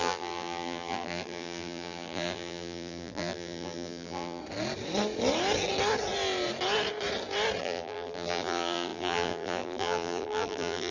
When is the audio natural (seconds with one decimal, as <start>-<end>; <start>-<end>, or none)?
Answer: 4.4-7.6